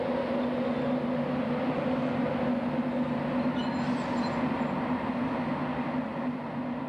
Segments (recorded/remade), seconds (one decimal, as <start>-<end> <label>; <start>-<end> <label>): 0.0-6.9 recorded